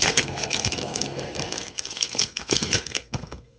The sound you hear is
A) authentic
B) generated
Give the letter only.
B